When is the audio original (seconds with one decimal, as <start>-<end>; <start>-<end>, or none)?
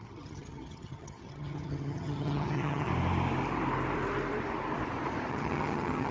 2.9-5.3